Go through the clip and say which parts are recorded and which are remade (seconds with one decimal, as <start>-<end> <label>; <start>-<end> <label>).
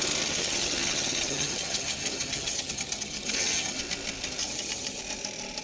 0.0-0.4 recorded; 0.4-3.8 remade; 3.8-4.4 recorded; 4.4-5.0 remade; 5.0-5.6 recorded